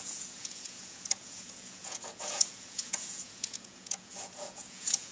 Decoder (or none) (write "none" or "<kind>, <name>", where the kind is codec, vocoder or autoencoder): vocoder, Vocos